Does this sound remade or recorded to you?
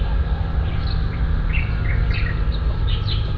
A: recorded